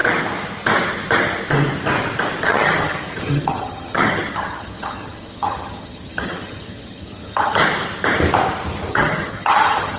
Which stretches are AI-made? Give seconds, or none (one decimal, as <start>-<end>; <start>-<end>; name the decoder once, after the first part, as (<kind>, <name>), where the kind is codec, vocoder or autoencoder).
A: 2.4-7.6 (vocoder, HiFi-GAN); 8.9-10.0